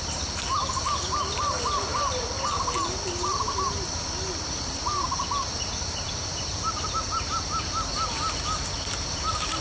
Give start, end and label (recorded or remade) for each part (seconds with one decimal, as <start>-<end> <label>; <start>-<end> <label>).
0.0-9.6 recorded